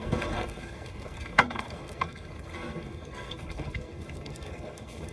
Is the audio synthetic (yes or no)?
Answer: yes